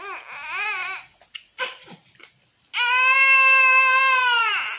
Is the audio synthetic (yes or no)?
no